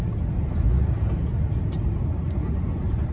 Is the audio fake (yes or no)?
no